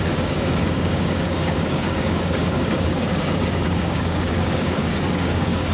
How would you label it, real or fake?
fake